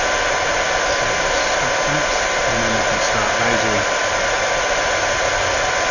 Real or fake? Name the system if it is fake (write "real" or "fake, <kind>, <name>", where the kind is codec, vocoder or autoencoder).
real